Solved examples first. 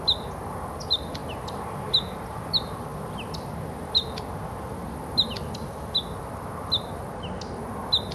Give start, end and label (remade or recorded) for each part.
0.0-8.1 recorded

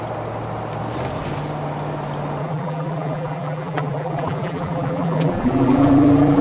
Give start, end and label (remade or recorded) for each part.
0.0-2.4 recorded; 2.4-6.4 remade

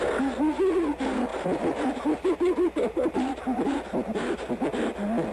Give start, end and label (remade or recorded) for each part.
0.0-1.3 recorded; 1.3-4.5 remade; 4.5-5.3 recorded

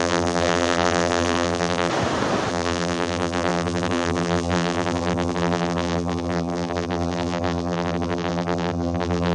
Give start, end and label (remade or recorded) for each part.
0.0-1.9 remade; 1.9-2.5 recorded; 2.5-9.3 remade

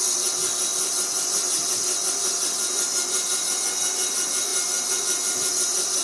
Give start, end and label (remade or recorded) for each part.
0.0-6.0 recorded